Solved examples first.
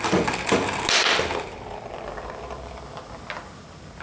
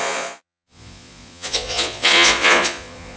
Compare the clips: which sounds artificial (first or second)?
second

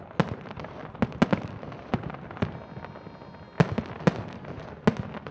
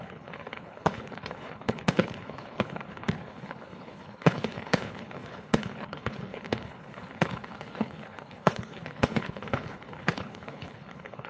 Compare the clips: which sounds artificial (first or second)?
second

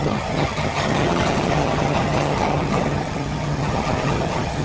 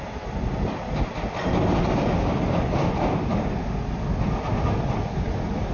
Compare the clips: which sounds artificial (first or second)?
first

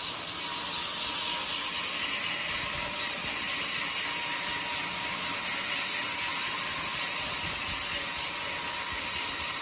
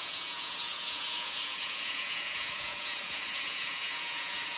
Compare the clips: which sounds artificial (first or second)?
second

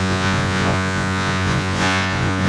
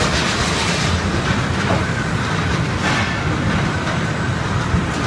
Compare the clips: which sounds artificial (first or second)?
first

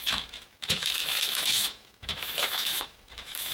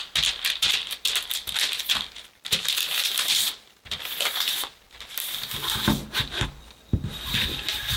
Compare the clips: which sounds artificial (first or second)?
first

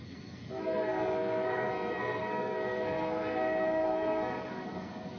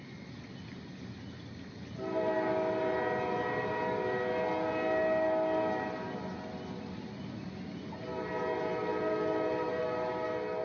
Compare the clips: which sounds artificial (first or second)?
first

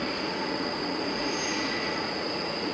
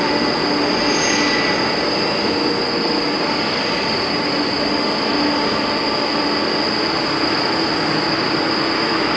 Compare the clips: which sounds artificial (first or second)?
first